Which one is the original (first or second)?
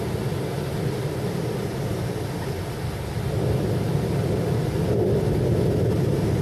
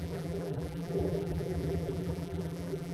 first